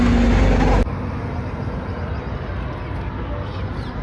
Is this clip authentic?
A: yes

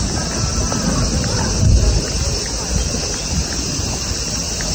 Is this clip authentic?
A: yes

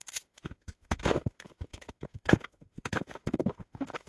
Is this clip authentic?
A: no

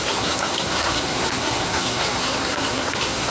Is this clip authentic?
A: no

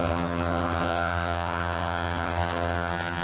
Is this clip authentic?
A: no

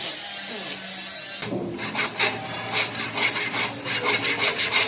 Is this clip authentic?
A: yes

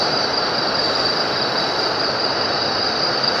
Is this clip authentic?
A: no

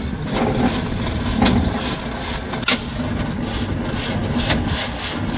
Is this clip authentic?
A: yes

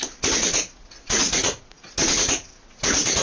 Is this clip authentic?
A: no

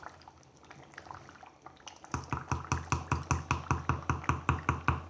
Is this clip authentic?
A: yes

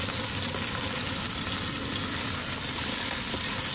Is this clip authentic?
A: yes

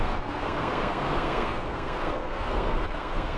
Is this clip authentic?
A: no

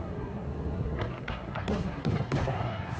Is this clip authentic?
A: no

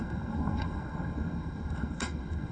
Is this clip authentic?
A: no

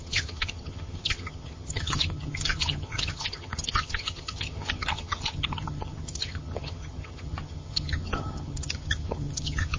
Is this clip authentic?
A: no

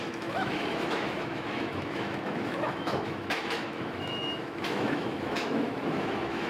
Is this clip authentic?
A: no